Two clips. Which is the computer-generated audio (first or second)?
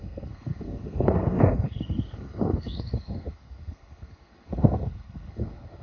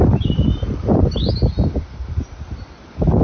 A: first